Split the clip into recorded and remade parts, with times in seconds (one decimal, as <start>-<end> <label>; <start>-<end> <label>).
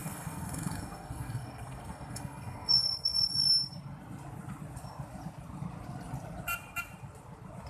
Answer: 0.0-3.3 remade; 3.3-7.7 recorded